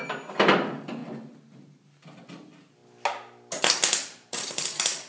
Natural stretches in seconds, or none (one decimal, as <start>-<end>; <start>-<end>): 1.0-2.0; 2.8-3.6

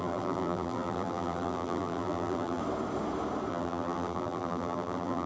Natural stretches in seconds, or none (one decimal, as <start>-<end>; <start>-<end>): 2.6-3.5

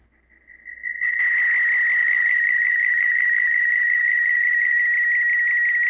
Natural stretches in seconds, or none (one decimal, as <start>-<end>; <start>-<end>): 0.0-2.0; 4.8-5.9

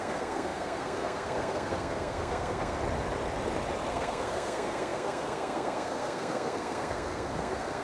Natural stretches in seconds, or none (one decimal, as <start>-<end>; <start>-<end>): 2.8-3.9